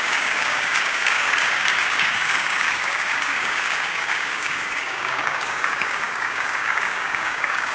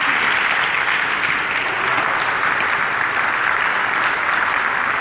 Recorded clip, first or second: second